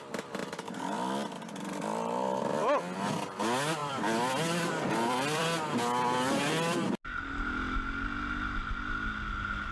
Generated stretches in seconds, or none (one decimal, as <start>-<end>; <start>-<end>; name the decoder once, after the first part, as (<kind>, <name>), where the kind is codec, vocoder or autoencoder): 0.4-2.4 (vocoder, BigVGAN v2); 3.8-5.4